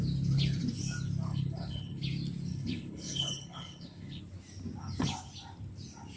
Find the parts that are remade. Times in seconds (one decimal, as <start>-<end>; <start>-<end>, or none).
1.3-2.0; 2.5-4.2